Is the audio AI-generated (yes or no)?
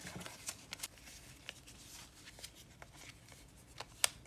no